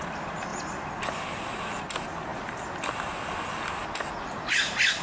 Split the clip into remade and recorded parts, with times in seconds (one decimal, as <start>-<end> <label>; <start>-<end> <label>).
0.0-5.0 recorded

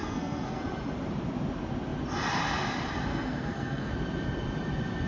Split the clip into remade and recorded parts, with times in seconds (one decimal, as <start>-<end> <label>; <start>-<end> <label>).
0.0-0.6 remade; 0.6-3.1 recorded; 3.1-3.9 remade; 3.9-5.1 recorded

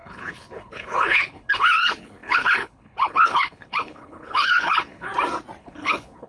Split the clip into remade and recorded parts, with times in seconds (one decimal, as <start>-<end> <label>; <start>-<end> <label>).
0.0-5.1 remade; 5.1-5.6 recorded; 5.6-6.3 remade

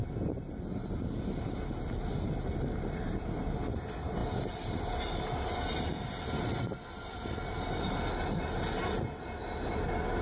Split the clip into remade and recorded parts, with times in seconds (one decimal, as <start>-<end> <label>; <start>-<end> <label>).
0.0-10.2 recorded

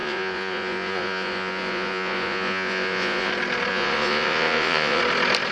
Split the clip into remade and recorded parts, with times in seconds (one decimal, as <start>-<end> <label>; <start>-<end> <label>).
0.0-3.3 remade; 3.3-3.7 recorded; 3.7-5.0 remade; 5.0-5.5 recorded

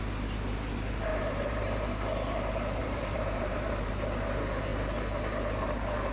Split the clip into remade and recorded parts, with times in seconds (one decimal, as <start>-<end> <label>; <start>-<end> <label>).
0.0-1.1 recorded; 1.1-1.9 remade; 1.9-2.8 recorded; 2.8-3.9 remade; 3.9-6.1 recorded